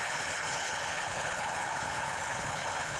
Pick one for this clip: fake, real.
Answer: fake